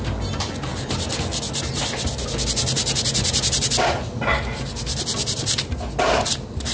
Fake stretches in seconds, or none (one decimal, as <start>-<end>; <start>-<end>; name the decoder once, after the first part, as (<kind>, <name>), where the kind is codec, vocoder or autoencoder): none